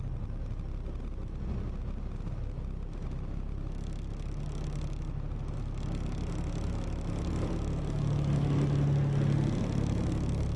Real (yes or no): yes